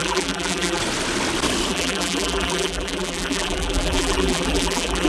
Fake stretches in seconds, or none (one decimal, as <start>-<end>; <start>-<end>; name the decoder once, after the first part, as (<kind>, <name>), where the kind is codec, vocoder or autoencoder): 0.0-0.8 (vocoder, BigVGAN v2); 1.7-5.1